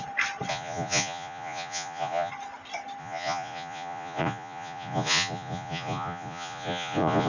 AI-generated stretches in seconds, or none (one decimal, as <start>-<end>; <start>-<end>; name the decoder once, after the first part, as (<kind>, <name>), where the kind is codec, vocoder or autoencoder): 0.5-2.3 (vocoder, Vocos); 3.0-7.3